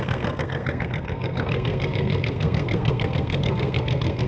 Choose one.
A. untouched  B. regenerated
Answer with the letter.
B